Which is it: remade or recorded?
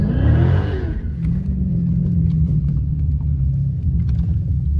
remade